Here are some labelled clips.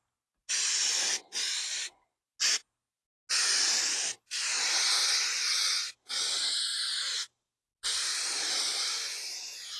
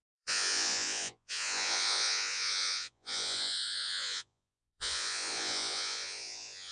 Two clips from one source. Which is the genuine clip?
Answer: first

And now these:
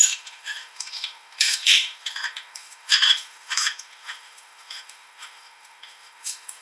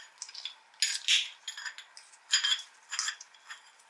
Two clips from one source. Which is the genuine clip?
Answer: second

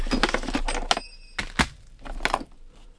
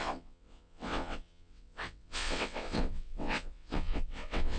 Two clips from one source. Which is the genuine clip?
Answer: first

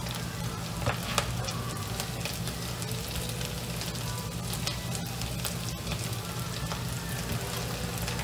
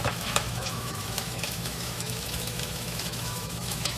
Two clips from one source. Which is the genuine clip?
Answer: first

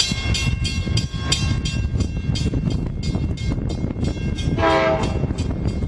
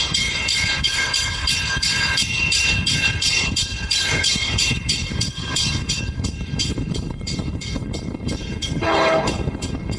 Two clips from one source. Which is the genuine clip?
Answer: first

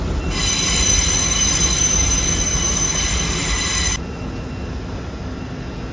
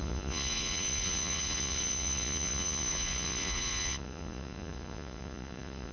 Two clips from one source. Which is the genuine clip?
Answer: first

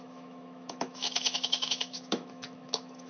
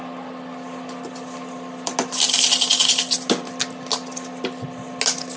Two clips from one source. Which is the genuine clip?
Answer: second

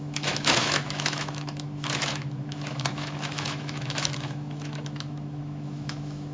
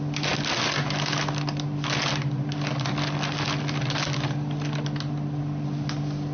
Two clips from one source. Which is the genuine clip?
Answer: second